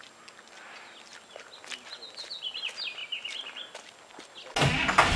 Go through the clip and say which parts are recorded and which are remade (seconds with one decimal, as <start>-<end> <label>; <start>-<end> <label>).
0.0-5.2 recorded